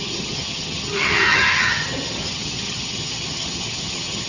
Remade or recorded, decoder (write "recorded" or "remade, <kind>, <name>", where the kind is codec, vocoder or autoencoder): remade, vocoder, HiFi-GAN